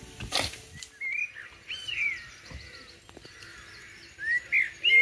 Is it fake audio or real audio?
real